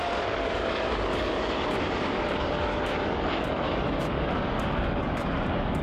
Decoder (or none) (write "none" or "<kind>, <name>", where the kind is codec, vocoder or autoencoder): codec, DAC